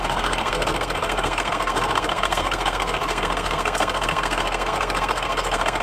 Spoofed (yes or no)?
yes